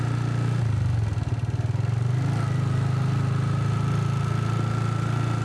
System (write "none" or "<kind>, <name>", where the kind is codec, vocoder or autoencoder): none